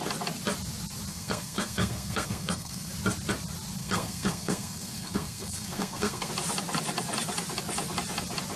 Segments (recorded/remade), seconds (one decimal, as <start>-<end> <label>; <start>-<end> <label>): 0.0-1.1 recorded; 1.1-2.9 remade; 2.9-3.8 recorded; 3.8-6.3 remade; 6.3-8.6 recorded